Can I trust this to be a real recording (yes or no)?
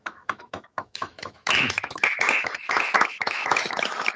no